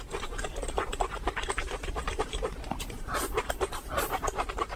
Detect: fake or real real